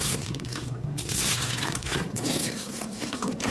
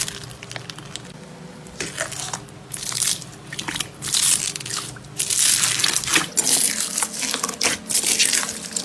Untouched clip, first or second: second